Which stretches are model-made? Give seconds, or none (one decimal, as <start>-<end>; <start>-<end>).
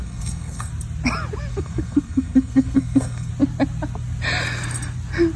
0.0-0.7; 1.5-3.3